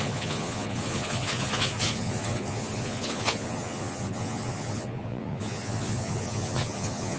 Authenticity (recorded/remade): remade